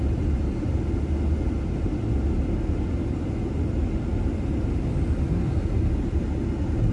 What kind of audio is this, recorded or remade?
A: recorded